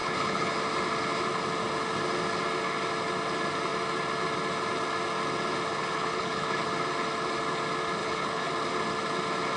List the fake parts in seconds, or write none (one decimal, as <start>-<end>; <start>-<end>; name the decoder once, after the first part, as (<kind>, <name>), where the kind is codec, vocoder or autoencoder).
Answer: 0.0-0.5 (codec, HILCodec); 5.7-6.7; 8.0-8.5